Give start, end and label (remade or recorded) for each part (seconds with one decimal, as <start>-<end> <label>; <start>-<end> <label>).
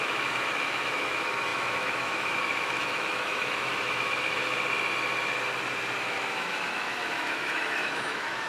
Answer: 0.0-4.4 remade; 4.4-6.0 recorded; 6.0-8.5 remade